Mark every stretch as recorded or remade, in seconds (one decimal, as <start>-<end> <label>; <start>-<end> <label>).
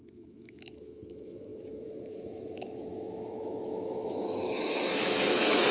0.0-5.7 remade